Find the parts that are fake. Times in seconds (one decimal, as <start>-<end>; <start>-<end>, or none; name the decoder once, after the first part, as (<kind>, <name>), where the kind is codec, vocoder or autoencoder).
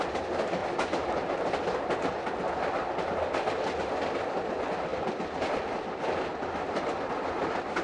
none